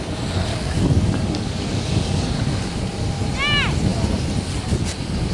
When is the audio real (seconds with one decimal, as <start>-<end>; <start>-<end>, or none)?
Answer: 0.0-0.5; 2.7-5.3